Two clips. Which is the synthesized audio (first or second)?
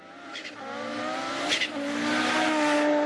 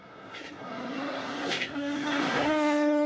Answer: second